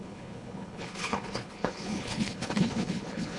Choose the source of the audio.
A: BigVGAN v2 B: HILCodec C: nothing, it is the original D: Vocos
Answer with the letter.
B